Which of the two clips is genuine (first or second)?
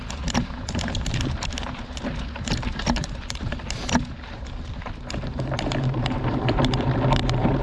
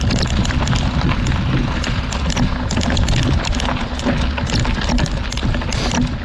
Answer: second